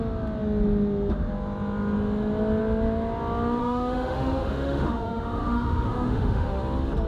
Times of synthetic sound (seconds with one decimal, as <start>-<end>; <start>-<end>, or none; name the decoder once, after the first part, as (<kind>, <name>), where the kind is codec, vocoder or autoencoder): 3.6-6.6 (autoencoder, DAC-VAE)